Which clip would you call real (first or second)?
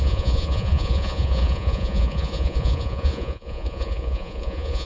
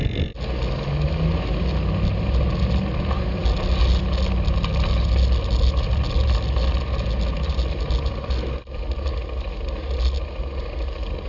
second